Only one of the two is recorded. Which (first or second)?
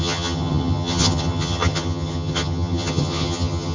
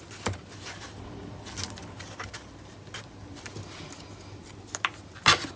second